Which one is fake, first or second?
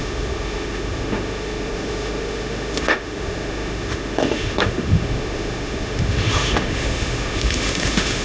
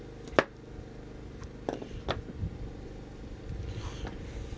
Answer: first